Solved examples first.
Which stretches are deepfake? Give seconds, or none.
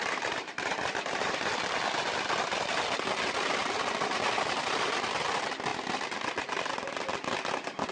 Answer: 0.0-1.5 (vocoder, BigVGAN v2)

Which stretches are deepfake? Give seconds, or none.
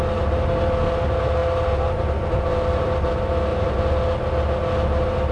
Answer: 2.5-3.1 (vocoder, BigVGAN v2); 3.5-4.0